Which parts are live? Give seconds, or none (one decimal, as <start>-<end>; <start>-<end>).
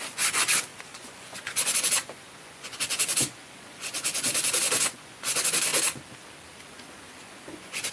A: 5.7-6.6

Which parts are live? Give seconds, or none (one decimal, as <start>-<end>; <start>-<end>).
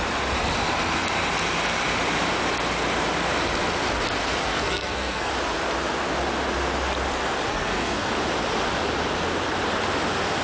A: 0.0-4.4; 5.3-7.5; 8.1-10.4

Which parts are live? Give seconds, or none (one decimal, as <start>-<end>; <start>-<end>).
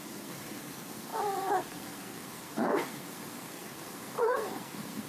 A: none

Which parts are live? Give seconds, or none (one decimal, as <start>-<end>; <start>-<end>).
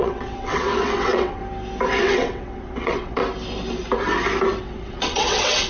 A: 1.4-2.0; 3.2-4.6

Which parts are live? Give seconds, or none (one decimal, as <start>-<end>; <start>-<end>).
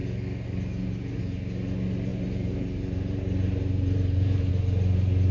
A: 0.0-2.1; 4.5-5.3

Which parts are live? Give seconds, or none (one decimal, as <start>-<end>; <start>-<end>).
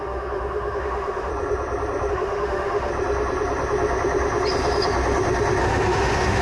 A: 1.3-2.1; 2.9-5.6